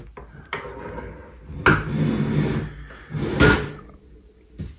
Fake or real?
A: real